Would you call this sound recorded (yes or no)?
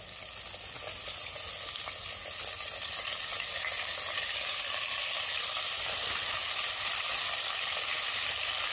yes